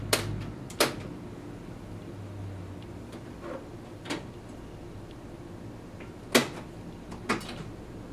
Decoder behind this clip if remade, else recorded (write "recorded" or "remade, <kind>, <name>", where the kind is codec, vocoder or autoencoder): recorded